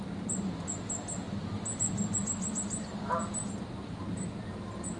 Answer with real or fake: real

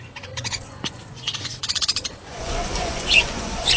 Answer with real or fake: fake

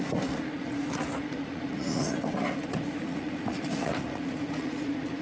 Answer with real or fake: fake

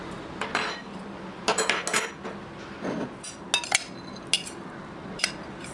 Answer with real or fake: real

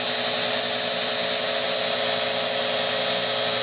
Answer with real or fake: real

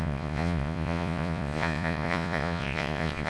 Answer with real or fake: fake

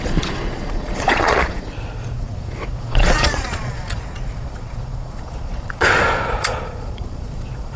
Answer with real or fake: fake